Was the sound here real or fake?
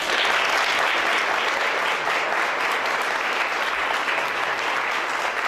real